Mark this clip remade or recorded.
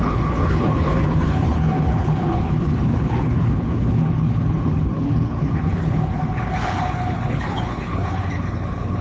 remade